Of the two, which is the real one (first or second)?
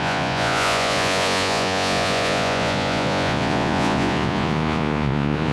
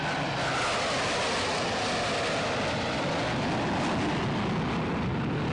second